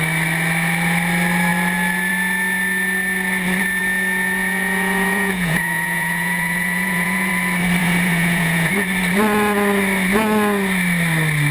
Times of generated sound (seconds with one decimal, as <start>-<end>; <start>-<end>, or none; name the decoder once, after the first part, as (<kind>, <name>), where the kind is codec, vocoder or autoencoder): 3.8-7.3 (vocoder, Vocos); 7.8-8.7

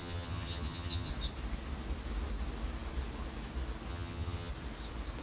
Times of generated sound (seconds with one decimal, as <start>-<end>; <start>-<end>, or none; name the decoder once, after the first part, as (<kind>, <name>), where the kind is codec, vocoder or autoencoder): 0.0-1.1 (vocoder, HiFi-GAN); 3.9-4.5

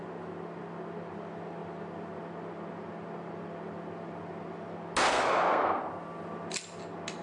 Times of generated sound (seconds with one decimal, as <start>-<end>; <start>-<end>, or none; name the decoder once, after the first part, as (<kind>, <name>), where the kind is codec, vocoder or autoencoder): 5.1-5.8 (codec, SNAC)

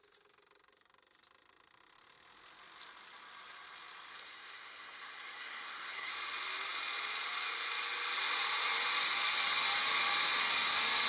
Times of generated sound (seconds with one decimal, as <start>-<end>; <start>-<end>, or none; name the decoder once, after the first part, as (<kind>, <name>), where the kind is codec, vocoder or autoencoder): 4.1-6.1 (codec, SNAC)

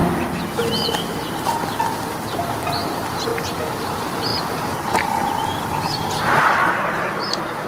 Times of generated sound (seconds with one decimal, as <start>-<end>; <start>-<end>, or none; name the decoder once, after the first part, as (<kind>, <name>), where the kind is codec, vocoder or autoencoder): 2.6-3.3 (vocoder, BigVGAN v2); 3.8-7.7

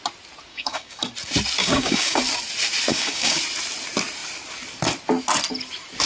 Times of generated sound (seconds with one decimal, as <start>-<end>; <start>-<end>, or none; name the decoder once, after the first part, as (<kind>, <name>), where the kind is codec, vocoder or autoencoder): 0.5-1.0 (codec, DAC); 1.6-2.2; 2.9-3.4

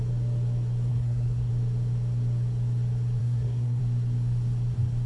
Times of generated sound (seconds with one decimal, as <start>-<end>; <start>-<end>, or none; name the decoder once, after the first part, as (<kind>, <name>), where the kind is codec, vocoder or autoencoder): 0.9-1.5 (codec, SNAC); 3.2-3.8